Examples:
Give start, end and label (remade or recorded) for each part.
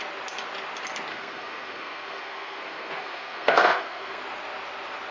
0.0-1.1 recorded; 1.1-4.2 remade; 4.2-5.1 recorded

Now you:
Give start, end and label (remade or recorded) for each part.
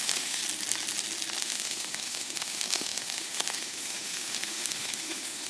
0.0-0.4 remade; 0.4-1.4 recorded; 1.4-5.5 remade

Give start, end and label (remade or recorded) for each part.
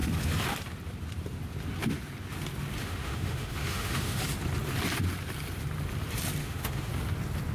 0.0-2.8 recorded; 2.8-4.2 remade; 4.2-6.4 recorded; 6.4-6.9 remade; 6.9-7.5 recorded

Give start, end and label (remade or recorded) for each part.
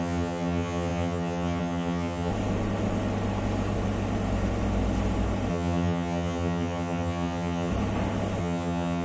0.0-2.3 remade; 2.3-5.5 recorded; 5.5-7.7 remade; 7.7-8.4 recorded; 8.4-9.0 remade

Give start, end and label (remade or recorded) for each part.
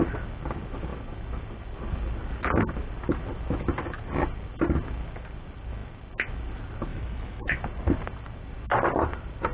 0.0-6.9 recorded; 6.9-7.6 remade; 7.6-9.5 recorded